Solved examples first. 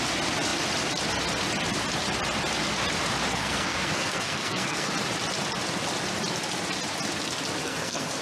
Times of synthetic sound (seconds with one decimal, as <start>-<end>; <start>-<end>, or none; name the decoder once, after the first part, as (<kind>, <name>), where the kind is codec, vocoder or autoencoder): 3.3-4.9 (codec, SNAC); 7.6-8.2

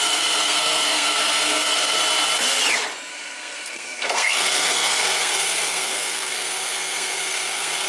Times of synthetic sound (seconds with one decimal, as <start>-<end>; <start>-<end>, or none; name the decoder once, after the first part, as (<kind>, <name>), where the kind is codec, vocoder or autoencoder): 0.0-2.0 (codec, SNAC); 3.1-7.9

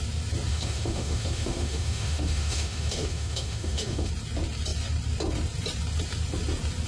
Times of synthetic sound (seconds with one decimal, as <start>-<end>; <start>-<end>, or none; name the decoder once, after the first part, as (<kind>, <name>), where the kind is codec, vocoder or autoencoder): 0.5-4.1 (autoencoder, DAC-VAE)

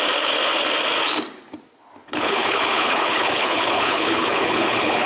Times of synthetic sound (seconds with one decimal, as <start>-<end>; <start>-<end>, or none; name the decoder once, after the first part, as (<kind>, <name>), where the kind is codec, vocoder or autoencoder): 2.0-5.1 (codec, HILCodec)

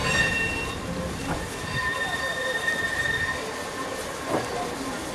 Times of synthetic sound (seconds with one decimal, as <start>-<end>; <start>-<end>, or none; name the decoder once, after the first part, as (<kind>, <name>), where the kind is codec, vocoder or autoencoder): 1.0-3.9 (vocoder, BigVGAN v2)

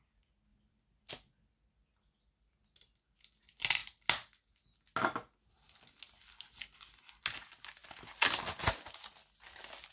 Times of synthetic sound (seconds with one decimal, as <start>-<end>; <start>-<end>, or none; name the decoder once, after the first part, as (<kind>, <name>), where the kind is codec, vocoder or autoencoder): none

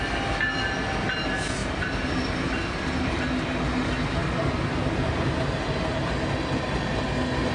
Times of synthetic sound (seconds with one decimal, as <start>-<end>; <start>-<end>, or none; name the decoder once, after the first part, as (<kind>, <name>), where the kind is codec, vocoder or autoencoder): 1.6-3.1 (vocoder, BigVGAN v2)